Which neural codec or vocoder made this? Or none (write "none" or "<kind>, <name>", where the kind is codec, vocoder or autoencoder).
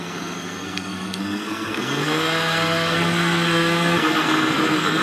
codec, SNAC